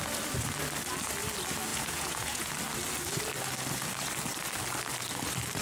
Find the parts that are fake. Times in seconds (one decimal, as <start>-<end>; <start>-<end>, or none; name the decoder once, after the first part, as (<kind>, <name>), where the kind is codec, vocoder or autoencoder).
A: 1.7-2.5 (vocoder, Vocos)